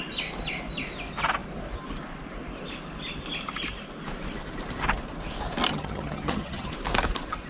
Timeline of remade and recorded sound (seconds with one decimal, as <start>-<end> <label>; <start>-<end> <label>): 0.0-5.7 recorded; 5.7-6.7 remade; 6.7-7.5 recorded

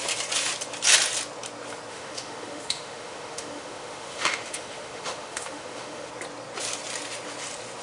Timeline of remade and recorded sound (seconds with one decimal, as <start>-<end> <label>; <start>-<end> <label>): 0.0-1.9 recorded; 1.9-6.1 remade; 6.1-7.8 recorded

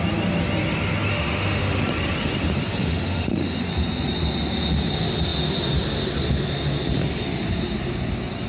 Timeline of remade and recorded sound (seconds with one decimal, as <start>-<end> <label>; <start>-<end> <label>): 0.0-1.1 recorded; 1.1-1.8 remade; 1.8-2.8 recorded; 2.8-3.6 remade; 3.6-8.5 recorded

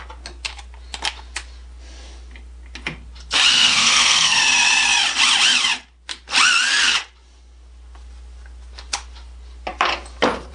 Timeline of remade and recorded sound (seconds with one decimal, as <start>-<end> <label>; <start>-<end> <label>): 0.0-3.5 recorded; 3.5-4.4 remade; 4.4-10.5 recorded